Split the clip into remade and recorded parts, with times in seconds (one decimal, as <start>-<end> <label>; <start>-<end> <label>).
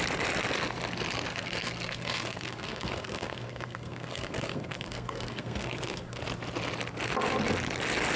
0.0-1.3 recorded; 1.3-6.2 remade; 6.2-8.2 recorded